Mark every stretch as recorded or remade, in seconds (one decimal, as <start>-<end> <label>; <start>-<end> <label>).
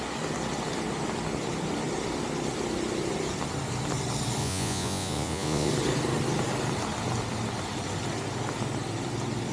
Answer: 0.0-4.4 recorded; 4.4-5.7 remade; 5.7-9.5 recorded